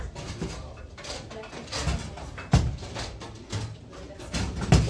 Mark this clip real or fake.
real